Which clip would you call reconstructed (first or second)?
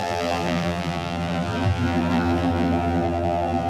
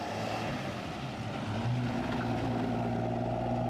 first